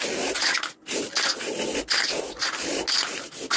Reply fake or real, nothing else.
real